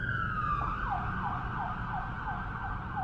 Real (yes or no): yes